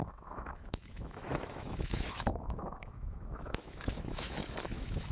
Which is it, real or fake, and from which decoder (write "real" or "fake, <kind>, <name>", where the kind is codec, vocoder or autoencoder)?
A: fake, autoencoder, DAC-VAE